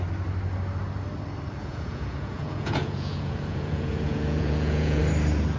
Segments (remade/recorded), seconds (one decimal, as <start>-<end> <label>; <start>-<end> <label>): 0.0-1.6 recorded; 1.6-5.0 remade; 5.0-5.6 recorded